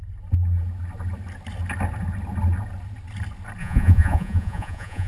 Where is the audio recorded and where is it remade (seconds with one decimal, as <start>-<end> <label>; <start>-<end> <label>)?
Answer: 0.0-3.6 recorded; 3.6-5.1 remade